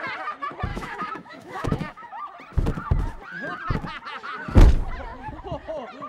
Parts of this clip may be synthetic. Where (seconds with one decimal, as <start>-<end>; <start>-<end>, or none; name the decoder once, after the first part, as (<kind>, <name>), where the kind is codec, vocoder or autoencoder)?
0.7-2.2 (autoencoder, DAC-VAE)